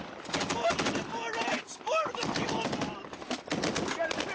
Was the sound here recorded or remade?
recorded